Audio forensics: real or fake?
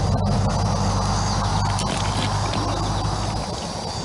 real